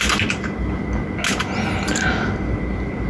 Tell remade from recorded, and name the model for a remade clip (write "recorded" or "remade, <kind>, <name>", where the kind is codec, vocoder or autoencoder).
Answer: recorded